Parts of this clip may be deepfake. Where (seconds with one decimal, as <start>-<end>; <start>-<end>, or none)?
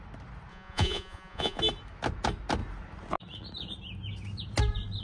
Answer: 0.5-1.6